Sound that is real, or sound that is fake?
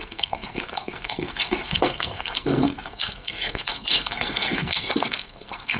fake